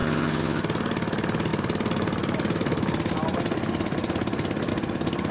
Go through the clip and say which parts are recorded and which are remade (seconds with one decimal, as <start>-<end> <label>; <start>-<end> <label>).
0.0-0.6 remade; 0.6-5.3 recorded